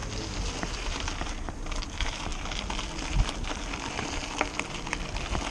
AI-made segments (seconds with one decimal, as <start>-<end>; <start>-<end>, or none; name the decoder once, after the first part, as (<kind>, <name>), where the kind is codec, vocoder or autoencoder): none